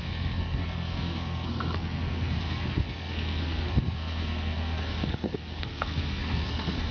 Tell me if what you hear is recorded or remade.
remade